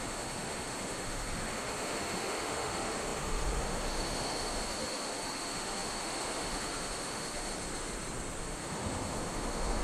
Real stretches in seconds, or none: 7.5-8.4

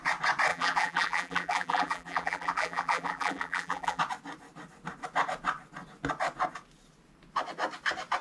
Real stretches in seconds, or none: 0.0-0.5; 4.0-8.2

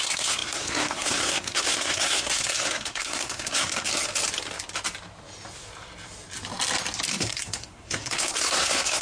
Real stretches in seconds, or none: 3.9-7.1

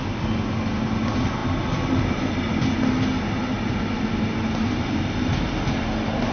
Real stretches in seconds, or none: 0.0-6.3

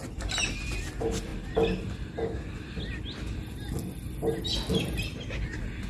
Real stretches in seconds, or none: 0.0-5.9

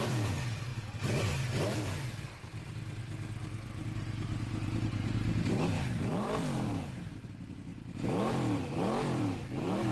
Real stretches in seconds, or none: 0.7-1.2; 7.7-8.3

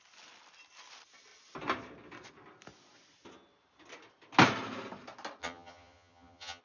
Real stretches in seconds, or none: 0.0-5.4

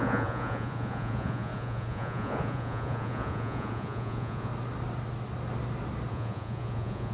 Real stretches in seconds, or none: 4.5-6.1